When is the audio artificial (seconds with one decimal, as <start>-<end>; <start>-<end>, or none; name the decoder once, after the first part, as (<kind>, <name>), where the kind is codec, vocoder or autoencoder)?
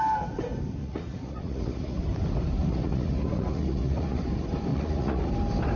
0.8-2.0 (vocoder, Vocos); 2.6-4.2; 4.7-5.3